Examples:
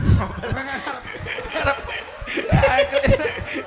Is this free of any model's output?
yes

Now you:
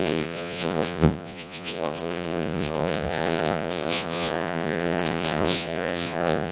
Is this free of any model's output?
no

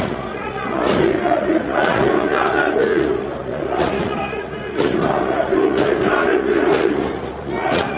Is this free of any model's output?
no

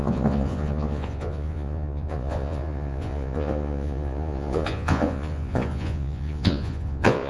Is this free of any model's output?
no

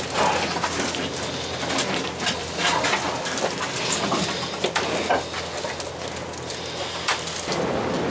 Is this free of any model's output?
yes